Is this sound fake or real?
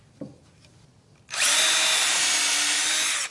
real